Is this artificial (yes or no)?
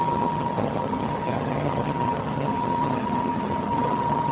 yes